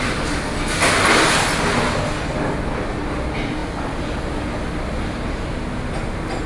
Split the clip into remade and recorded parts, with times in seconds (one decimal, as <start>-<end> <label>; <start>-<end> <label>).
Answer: 0.0-6.5 recorded